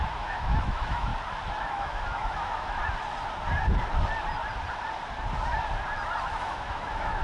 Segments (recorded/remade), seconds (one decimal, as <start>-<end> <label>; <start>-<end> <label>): 0.0-1.1 remade; 1.1-1.7 recorded; 1.7-2.8 remade; 2.8-6.3 recorded; 6.3-7.2 remade